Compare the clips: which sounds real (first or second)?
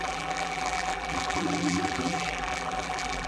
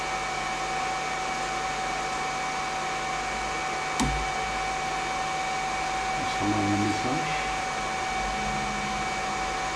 second